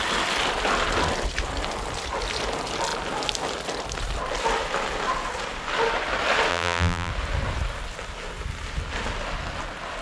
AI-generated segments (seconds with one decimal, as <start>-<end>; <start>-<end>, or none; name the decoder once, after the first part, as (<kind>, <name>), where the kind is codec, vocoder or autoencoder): 6.5-7.1 (vocoder, BigVGAN v2)